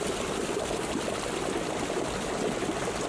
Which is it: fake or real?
real